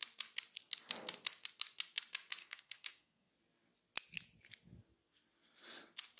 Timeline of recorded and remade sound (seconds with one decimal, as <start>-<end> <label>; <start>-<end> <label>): 0.0-2.4 recorded; 2.4-3.3 remade; 3.3-6.2 recorded